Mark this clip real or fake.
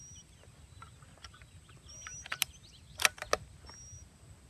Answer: real